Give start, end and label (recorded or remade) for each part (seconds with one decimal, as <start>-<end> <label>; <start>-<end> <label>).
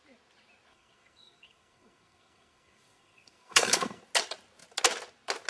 0.0-0.7 recorded; 0.7-4.0 remade; 4.0-5.5 recorded